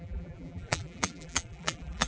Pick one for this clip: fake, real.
fake